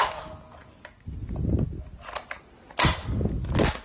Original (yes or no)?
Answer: yes